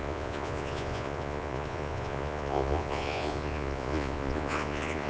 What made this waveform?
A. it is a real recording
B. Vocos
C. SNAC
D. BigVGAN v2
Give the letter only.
B